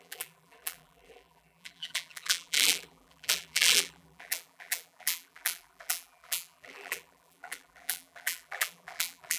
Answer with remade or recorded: remade